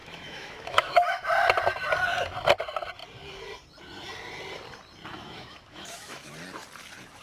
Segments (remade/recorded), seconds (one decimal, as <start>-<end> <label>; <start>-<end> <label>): 0.0-1.3 remade; 1.3-5.1 recorded; 5.1-6.3 remade; 6.3-7.2 recorded